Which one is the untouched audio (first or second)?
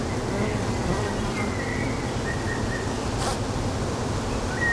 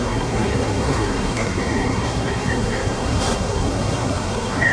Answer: first